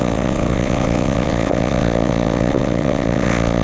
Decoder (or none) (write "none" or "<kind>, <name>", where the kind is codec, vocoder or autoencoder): vocoder, WaveNeXt